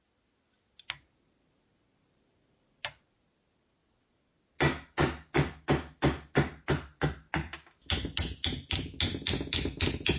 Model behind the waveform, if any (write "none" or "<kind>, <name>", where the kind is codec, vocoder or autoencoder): none